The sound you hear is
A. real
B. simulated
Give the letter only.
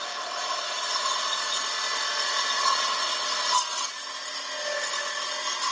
A